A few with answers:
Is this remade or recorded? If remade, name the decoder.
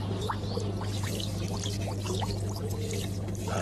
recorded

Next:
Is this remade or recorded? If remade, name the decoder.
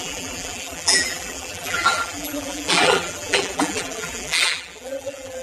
remade, vocoder, BigVGAN v2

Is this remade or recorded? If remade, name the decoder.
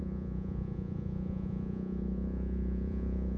remade, vocoder, Vocos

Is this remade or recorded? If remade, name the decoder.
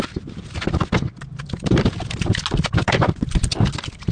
recorded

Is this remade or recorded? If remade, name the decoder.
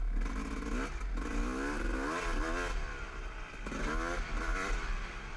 recorded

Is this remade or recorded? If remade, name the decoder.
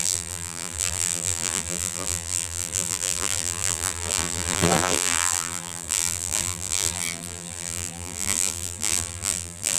remade, vocoder, BigVGAN v2